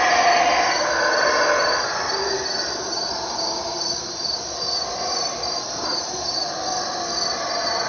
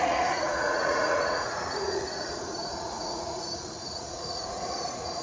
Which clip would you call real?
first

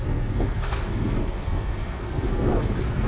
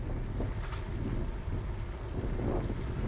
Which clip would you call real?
second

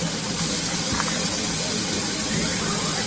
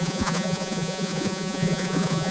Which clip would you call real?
first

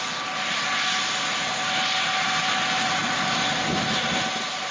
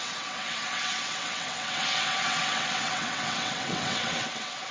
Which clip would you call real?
first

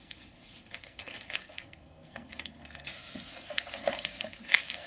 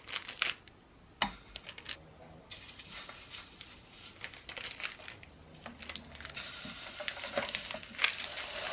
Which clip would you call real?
second